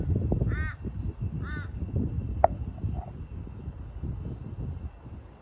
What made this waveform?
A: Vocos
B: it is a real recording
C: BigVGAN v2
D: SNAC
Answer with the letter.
B